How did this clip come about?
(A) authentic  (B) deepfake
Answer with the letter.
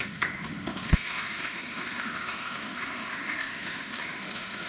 B